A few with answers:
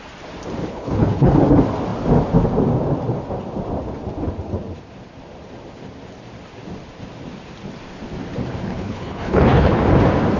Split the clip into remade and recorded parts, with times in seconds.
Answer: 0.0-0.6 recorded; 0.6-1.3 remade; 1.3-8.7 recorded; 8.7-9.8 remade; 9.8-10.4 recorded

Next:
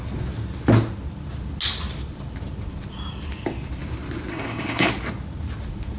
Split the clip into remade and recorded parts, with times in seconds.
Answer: 0.0-4.3 recorded; 4.3-4.9 remade; 4.9-6.0 recorded

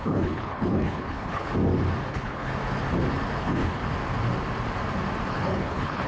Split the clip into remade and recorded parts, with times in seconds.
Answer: 0.0-1.5 remade; 1.5-2.1 recorded; 2.1-2.5 remade; 2.5-3.4 recorded; 3.4-3.8 remade; 3.8-5.3 recorded; 5.3-6.1 remade

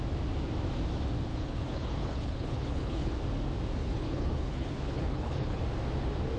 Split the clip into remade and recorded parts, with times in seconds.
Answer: 0.0-1.3 recorded; 1.3-3.1 remade; 3.1-3.8 recorded; 3.8-5.6 remade; 5.6-6.4 recorded

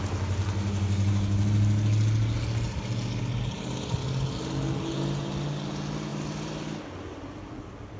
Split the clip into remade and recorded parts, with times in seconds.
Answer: 0.0-8.0 recorded